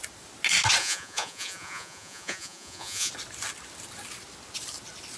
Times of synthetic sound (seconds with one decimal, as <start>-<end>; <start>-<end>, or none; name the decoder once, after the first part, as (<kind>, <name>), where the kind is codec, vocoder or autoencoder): 0.8-3.1 (vocoder, Vocos)